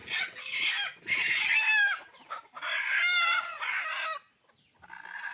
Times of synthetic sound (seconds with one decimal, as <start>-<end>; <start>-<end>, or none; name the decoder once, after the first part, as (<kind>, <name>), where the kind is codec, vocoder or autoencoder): none